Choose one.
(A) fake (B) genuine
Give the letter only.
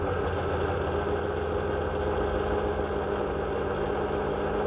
B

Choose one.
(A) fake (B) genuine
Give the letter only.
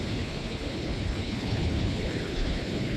A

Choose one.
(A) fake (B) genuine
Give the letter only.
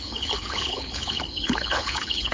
A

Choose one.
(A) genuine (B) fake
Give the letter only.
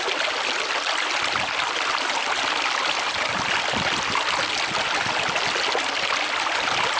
A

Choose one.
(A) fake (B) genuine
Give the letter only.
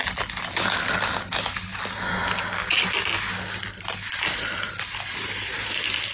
B